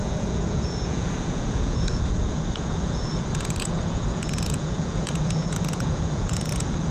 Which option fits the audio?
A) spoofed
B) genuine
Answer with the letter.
A